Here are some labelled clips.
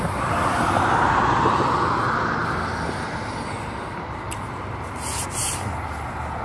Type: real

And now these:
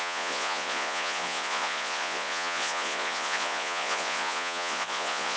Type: fake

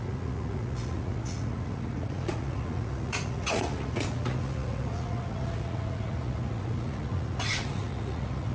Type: fake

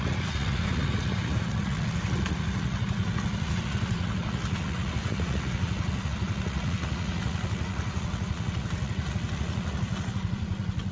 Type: fake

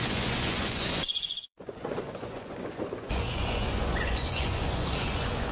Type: fake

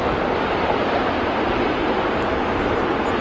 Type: real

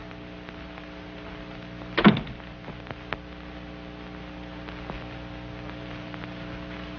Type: real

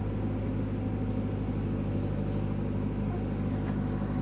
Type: real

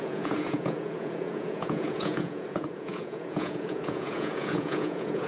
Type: fake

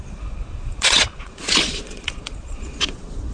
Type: fake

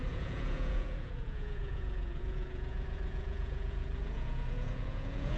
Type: fake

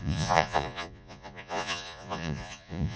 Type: fake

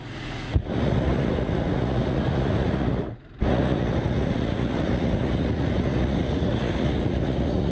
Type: fake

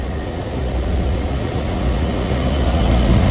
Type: fake